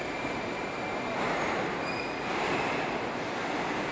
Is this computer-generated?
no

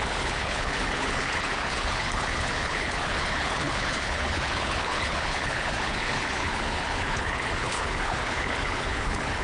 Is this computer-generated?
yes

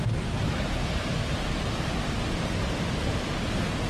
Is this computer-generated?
no